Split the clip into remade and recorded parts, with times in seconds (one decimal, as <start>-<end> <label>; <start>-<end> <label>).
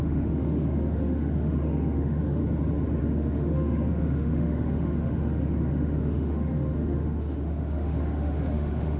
0.0-2.4 remade; 2.4-3.0 recorded; 3.0-9.0 remade